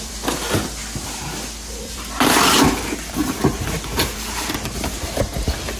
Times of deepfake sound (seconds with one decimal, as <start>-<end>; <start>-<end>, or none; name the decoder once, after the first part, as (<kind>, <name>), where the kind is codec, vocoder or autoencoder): 0.0-0.8 (vocoder, BigVGAN v2); 1.7-5.8